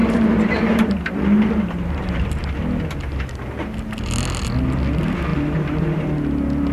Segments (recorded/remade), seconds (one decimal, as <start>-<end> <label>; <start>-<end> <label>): 0.0-2.4 remade; 2.4-5.3 recorded; 5.3-6.0 remade; 6.0-6.7 recorded

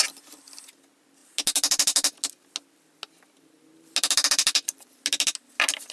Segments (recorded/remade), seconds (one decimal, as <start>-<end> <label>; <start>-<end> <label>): 0.0-5.9 recorded

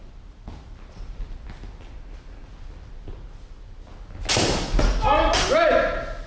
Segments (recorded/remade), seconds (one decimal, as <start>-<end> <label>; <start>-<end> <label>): 0.0-6.3 recorded

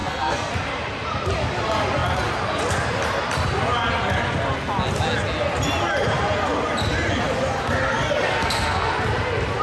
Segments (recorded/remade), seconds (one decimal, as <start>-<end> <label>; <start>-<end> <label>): 0.0-0.5 remade; 0.5-8.3 recorded; 8.3-8.9 remade; 8.9-9.6 recorded

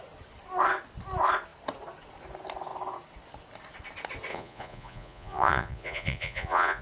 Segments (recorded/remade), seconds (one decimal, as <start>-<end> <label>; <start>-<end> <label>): 0.0-4.3 recorded; 4.3-6.8 remade

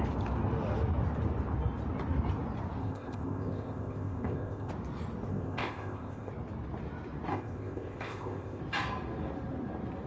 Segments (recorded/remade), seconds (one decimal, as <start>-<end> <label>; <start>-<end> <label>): 0.0-2.8 recorded; 2.8-4.7 remade; 4.7-5.3 recorded; 5.3-6.3 remade; 6.3-7.3 recorded; 7.3-8.6 remade; 8.6-10.1 recorded

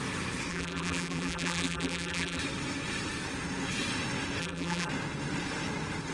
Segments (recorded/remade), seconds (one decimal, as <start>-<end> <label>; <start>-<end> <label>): 0.0-0.5 recorded; 0.5-2.4 remade; 2.4-4.4 recorded; 4.4-4.9 remade; 4.9-6.1 recorded

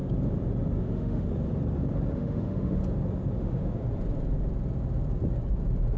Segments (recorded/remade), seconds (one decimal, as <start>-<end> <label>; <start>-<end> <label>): 0.0-0.8 recorded; 0.8-1.3 remade; 1.3-2.1 recorded; 2.1-2.8 remade; 2.8-3.4 recorded; 3.4-3.8 remade; 3.8-6.0 recorded